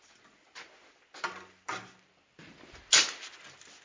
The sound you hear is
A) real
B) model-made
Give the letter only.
A